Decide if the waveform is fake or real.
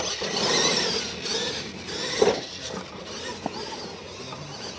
real